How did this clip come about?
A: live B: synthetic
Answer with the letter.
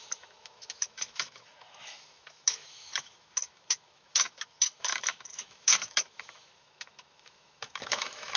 B